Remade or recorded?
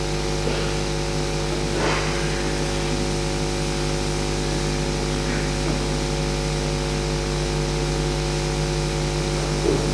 recorded